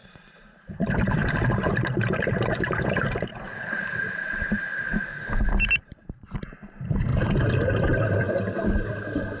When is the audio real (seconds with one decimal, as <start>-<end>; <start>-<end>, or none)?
4.7-5.8; 7.1-7.8